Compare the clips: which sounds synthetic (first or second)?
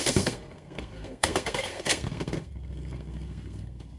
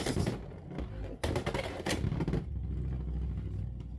first